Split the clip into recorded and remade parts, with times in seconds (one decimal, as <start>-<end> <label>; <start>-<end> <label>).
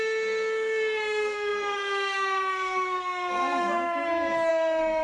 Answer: 0.0-5.0 remade